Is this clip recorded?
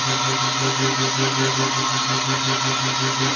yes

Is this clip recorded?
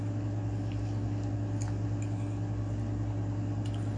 yes